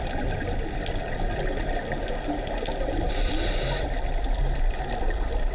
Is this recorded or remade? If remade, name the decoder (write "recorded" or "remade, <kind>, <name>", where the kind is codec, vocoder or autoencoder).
recorded